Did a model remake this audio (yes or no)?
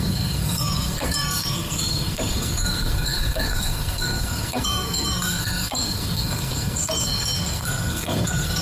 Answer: yes